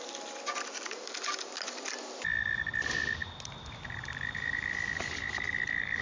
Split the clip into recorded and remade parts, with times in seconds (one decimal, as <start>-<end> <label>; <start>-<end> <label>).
0.0-6.0 recorded